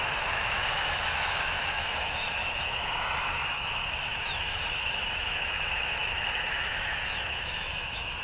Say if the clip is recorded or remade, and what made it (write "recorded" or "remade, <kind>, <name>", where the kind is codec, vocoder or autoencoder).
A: remade, autoencoder, DAC-VAE